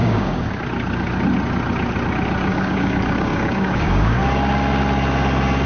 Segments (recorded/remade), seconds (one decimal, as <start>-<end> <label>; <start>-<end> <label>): 0.0-0.5 remade; 0.5-2.5 recorded; 2.5-4.2 remade; 4.2-5.7 recorded